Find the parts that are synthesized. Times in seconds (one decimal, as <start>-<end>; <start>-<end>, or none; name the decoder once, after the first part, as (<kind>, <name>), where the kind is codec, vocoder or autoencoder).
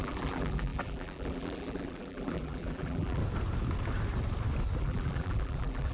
0.0-3.2 (vocoder, BigVGAN v2); 4.8-5.9